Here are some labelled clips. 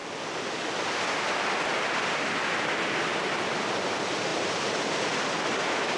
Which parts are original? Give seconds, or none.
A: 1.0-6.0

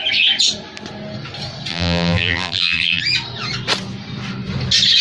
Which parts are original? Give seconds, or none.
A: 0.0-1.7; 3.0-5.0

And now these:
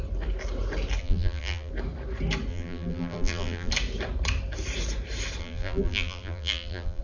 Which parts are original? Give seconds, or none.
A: 0.0-1.0; 1.7-2.5; 3.7-5.4